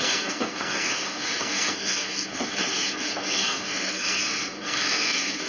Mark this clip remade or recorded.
remade